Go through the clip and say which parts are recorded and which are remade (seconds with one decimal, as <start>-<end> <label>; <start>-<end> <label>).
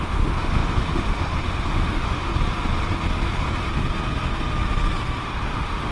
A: 0.0-2.3 remade; 2.3-5.2 recorded; 5.2-5.9 remade